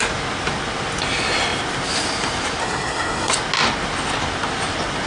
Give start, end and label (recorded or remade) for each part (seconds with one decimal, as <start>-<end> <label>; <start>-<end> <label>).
0.0-2.6 recorded; 2.6-3.3 remade; 3.3-5.1 recorded